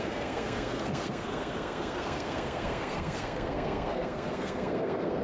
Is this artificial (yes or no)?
yes